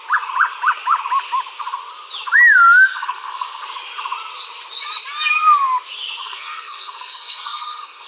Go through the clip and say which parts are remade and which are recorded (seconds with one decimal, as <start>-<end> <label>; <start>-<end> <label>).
0.0-2.9 recorded; 2.9-3.6 remade; 3.6-6.2 recorded; 6.2-8.1 remade